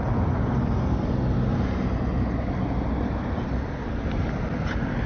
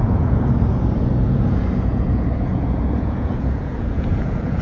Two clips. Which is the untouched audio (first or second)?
first